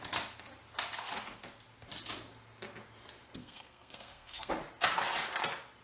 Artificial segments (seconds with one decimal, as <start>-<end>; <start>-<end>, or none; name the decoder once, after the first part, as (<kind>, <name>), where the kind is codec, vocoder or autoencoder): 3.4-4.5 (codec, SNAC)